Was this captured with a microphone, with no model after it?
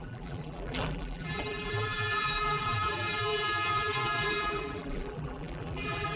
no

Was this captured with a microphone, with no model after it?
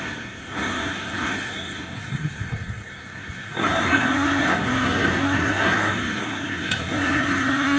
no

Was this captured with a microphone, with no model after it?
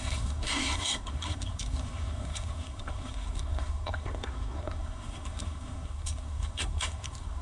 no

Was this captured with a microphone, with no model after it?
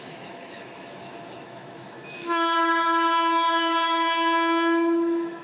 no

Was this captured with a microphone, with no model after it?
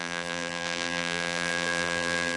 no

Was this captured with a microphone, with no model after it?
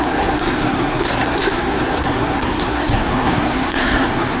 no